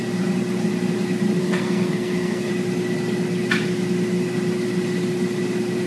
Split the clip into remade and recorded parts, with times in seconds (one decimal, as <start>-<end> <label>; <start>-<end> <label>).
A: 0.0-1.4 recorded; 1.4-2.5 remade; 2.5-5.9 recorded

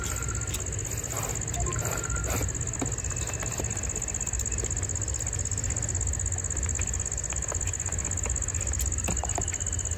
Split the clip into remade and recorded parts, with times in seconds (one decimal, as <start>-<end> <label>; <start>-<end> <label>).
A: 0.0-10.0 recorded

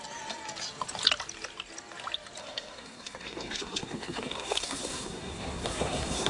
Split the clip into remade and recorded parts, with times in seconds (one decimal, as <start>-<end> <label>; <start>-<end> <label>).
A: 0.0-2.4 recorded; 2.4-6.3 remade